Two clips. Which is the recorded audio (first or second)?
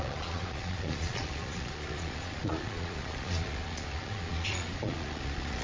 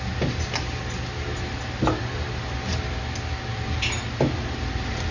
second